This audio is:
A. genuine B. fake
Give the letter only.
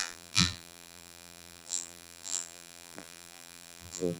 B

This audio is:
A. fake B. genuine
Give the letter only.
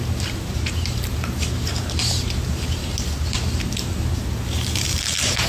A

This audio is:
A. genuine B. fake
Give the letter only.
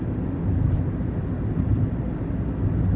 A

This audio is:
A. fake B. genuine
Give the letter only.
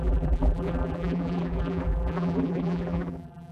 A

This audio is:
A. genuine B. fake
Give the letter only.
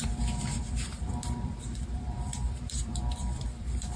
B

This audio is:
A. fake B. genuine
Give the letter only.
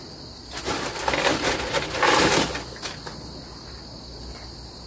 B